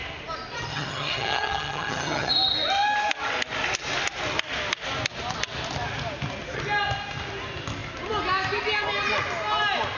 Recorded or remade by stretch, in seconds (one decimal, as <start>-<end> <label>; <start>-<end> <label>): 0.0-0.7 recorded; 0.7-2.3 remade; 2.3-10.0 recorded